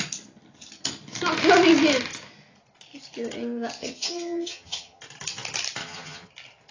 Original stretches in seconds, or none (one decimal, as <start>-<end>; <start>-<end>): 0.0-3.8; 5.0-5.8; 6.3-6.7

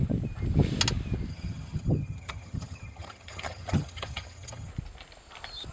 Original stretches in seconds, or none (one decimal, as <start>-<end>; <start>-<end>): 0.0-1.3; 4.7-5.7

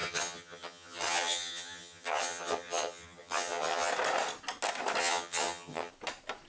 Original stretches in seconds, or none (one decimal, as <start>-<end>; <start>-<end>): 3.9-5.0; 5.9-6.5

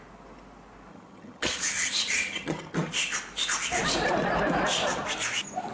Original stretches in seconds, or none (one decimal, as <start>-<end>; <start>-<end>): 0.0-0.9; 2.9-5.7

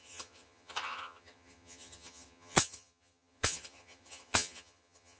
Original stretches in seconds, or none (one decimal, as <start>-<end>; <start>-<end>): none